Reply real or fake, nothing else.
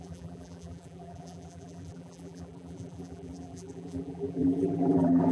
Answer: fake